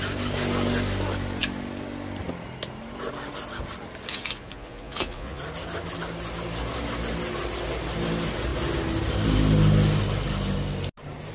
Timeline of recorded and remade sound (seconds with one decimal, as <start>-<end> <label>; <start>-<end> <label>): 0.0-4.1 recorded; 4.1-5.4 remade; 5.4-11.3 recorded